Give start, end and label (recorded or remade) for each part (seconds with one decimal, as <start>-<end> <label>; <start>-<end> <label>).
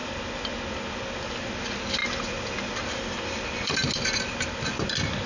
0.0-5.3 recorded